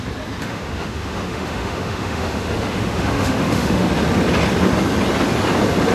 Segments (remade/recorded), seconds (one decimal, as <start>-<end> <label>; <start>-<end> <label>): 0.0-0.4 recorded; 0.4-3.9 remade; 3.9-5.9 recorded